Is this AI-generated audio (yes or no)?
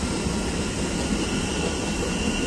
no